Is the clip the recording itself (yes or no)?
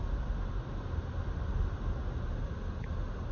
yes